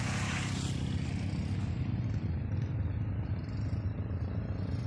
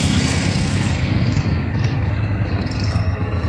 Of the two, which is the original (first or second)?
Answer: first